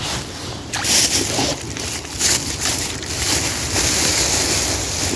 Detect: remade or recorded recorded